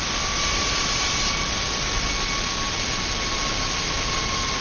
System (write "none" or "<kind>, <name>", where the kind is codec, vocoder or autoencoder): none